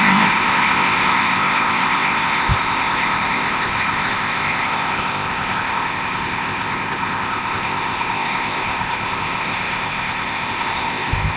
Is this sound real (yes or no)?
no